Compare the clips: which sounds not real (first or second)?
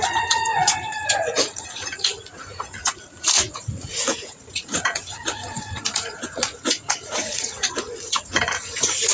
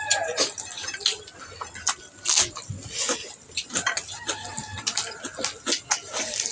first